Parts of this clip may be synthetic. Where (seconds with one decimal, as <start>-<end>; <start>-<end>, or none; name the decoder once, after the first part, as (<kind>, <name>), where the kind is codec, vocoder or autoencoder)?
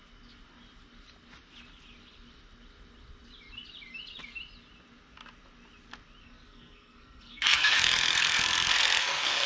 6.2-9.5 (codec, SNAC)